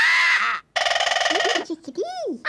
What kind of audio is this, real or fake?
real